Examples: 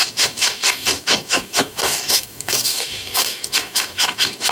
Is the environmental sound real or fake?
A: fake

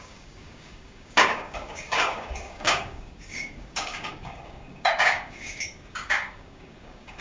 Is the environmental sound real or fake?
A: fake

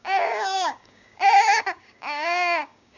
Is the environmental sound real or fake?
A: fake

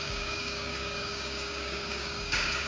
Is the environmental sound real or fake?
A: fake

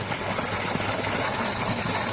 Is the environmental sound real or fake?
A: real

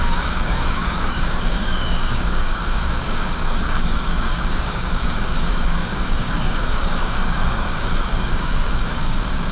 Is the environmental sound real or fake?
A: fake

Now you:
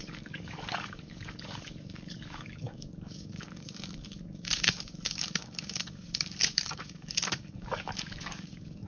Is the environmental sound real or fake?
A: fake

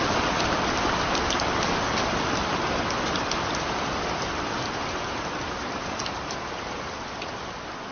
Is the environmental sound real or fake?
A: real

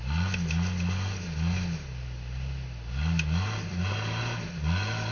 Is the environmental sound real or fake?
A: real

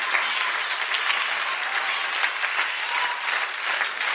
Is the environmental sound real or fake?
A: real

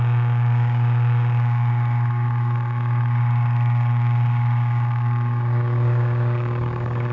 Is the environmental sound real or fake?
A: fake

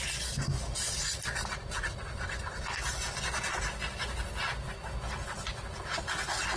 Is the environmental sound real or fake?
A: real